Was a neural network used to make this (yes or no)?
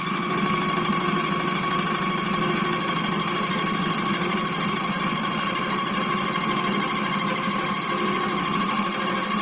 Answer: no